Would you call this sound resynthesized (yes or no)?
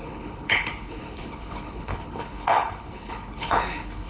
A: yes